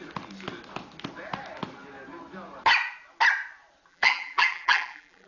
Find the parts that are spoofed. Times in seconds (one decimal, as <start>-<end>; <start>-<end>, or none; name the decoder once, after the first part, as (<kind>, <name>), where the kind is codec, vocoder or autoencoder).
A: 3.9-5.3 (vocoder, BigVGAN v2)